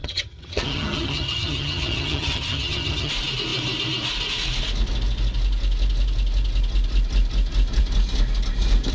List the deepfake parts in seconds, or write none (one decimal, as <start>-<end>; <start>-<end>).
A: 0.0-3.1